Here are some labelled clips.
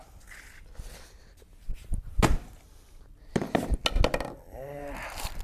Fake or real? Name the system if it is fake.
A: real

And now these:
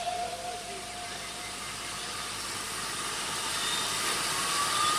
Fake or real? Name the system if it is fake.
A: fake, vocoder, BigVGAN v2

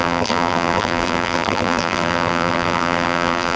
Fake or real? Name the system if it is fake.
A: fake, vocoder, BigVGAN v2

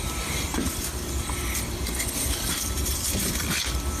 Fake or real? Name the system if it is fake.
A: fake, vocoder, BigVGAN v2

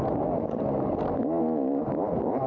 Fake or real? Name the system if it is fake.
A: real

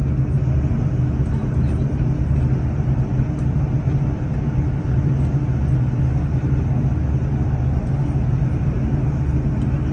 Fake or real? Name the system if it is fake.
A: real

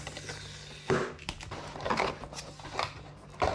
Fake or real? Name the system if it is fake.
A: real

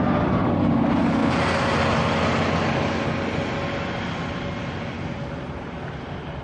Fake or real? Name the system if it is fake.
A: real